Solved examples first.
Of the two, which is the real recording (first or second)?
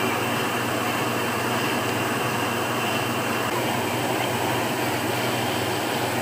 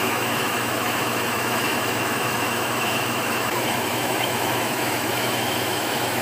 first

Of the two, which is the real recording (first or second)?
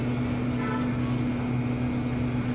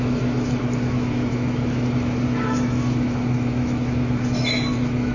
first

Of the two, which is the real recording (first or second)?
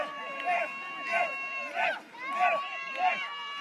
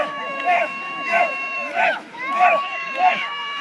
first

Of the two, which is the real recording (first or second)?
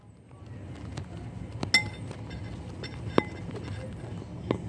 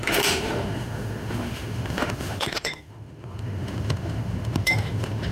first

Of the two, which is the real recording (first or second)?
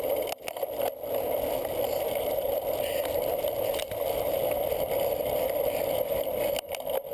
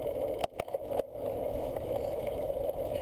first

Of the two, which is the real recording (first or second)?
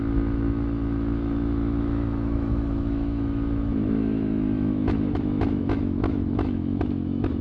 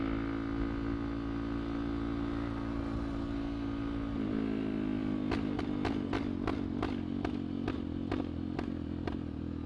second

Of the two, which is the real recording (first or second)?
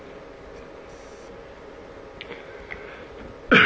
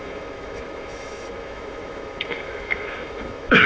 first